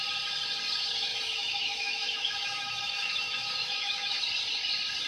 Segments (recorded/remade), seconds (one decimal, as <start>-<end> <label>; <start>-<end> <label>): 0.0-1.1 recorded; 1.1-4.2 remade; 4.2-5.1 recorded